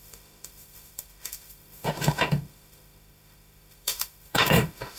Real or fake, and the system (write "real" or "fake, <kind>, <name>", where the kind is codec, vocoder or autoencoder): fake, autoencoder, DAC-VAE